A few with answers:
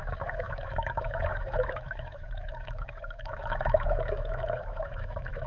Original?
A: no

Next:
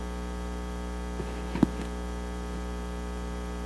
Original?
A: no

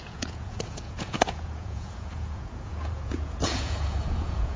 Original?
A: no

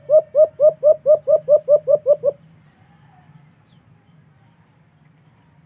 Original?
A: no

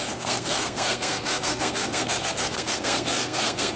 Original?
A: no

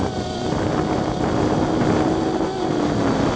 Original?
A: yes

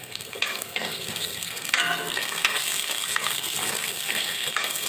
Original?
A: no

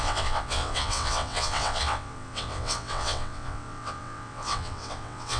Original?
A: no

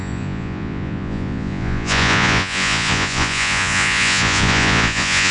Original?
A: no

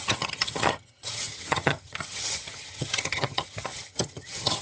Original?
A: no